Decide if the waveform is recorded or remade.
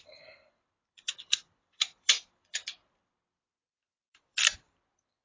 remade